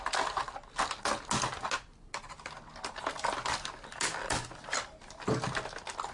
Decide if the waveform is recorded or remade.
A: recorded